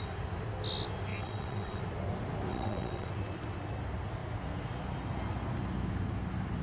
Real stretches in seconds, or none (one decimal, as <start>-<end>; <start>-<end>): 0.0-1.1; 1.8-2.5; 3.1-6.6